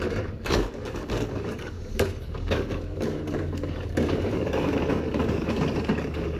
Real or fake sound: fake